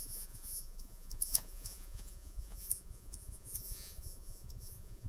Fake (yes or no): yes